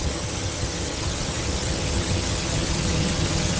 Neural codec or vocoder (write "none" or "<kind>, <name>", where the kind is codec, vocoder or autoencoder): vocoder, HiFi-GAN